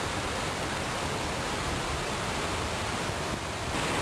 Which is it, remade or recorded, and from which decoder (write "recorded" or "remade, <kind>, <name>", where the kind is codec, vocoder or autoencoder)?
recorded